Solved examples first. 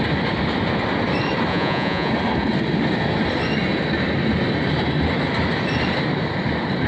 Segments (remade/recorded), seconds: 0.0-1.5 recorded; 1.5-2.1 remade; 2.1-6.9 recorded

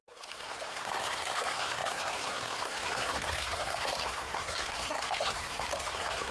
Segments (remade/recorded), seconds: 0.0-6.3 remade

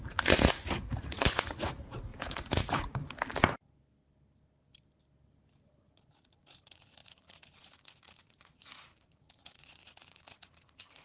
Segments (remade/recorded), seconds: 0.0-3.0 remade; 3.0-5.8 recorded; 5.8-11.0 remade

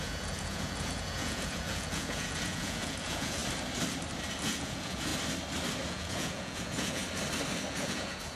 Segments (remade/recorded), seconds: 0.0-3.4 remade; 3.4-4.4 recorded; 4.4-5.1 remade; 5.1-5.9 recorded; 5.9-7.0 remade; 7.0-7.7 recorded; 7.7-8.4 remade

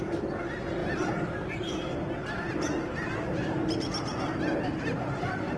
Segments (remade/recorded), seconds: 0.0-5.6 recorded

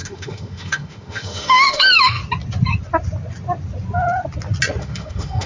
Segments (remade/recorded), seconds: 0.0-2.2 remade; 2.2-4.8 recorded; 4.8-5.5 remade